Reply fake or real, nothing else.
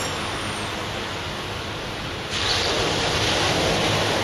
real